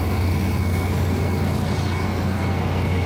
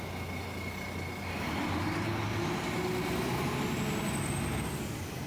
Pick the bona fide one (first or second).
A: second